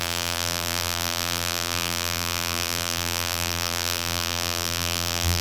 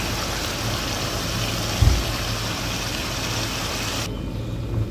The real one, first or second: second